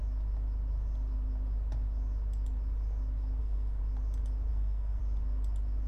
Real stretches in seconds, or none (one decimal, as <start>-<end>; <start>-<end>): 0.0-3.4; 3.8-4.5; 5.0-5.9